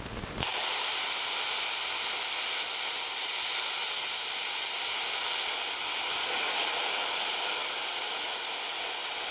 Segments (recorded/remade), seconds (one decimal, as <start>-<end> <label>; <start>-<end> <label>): 0.0-9.3 recorded

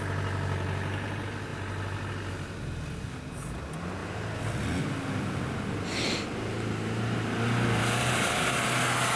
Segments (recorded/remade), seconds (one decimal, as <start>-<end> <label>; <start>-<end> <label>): 0.0-9.2 recorded

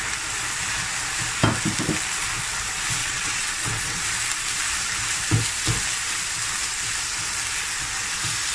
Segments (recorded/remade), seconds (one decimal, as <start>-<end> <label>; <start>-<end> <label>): 0.0-3.0 recorded; 3.0-4.0 remade; 4.0-8.5 recorded